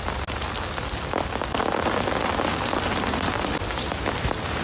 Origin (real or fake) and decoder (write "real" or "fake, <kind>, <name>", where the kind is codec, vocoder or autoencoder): real